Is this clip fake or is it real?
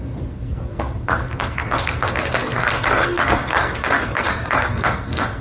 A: fake